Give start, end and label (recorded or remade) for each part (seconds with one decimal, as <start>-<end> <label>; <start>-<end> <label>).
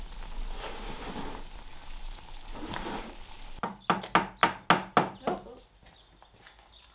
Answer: 0.0-6.9 recorded